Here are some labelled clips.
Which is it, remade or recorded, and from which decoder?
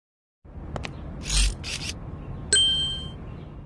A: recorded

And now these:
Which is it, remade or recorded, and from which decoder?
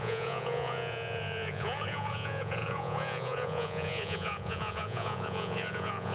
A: remade, vocoder, Vocos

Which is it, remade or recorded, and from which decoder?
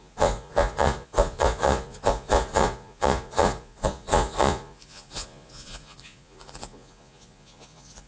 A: remade, vocoder, Vocos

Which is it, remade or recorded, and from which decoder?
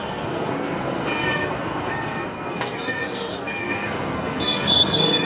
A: remade, codec, SNAC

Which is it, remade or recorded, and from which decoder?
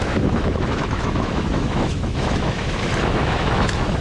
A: remade, autoencoder, DAC-VAE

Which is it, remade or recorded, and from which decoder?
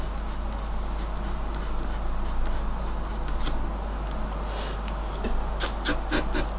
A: recorded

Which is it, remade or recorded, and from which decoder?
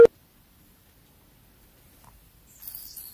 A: recorded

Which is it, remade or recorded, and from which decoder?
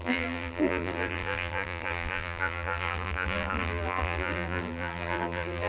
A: remade, vocoder, BigVGAN v2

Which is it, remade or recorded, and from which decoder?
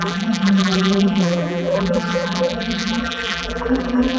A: remade, vocoder, BigVGAN v2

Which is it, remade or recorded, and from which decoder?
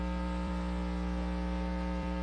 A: remade, vocoder, BigVGAN v2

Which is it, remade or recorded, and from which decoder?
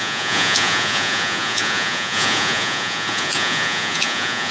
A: remade, vocoder, Vocos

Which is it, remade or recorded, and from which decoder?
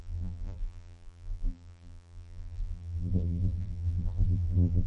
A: remade, vocoder, BigVGAN v2